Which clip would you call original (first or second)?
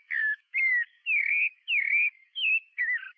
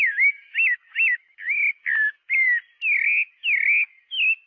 second